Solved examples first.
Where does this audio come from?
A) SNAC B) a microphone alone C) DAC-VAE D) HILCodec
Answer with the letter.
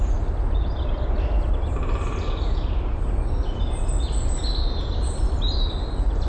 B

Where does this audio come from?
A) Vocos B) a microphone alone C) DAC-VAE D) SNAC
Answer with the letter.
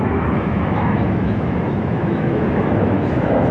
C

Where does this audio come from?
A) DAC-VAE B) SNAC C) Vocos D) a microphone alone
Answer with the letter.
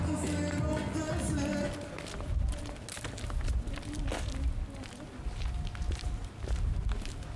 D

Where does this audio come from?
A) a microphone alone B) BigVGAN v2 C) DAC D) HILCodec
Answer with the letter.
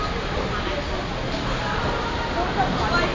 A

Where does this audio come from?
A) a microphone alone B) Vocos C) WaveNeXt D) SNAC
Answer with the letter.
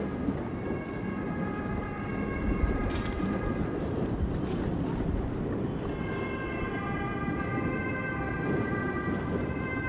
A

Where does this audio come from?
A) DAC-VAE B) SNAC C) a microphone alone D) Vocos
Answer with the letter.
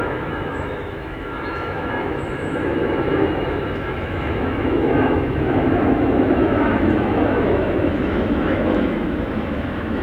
A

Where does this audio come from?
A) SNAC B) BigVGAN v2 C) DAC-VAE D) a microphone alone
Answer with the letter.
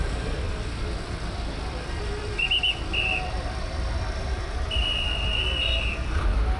B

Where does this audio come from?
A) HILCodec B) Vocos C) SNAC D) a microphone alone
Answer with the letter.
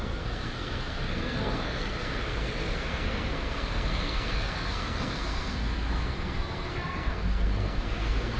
C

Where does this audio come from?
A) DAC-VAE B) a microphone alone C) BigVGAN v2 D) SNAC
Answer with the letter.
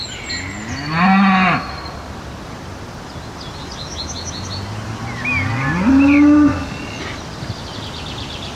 B